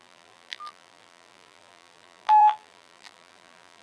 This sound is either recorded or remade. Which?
remade